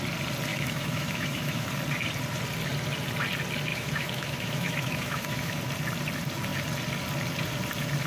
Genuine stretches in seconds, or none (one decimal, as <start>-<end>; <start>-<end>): 0.0-0.5; 1.7-3.7; 5.6-8.1